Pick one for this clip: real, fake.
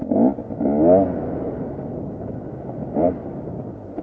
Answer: real